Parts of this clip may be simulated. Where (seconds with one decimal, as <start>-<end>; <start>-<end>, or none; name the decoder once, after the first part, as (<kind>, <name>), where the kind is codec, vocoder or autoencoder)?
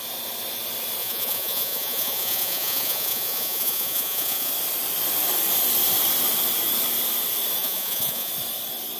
1.0-4.5 (vocoder, Vocos); 7.6-8.3